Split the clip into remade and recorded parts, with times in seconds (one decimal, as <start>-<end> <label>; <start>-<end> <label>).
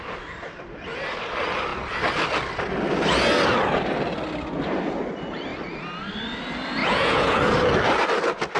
0.0-6.8 recorded; 6.8-7.4 remade; 7.4-8.6 recorded